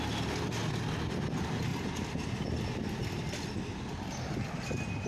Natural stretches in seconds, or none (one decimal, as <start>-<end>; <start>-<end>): 0.0-1.7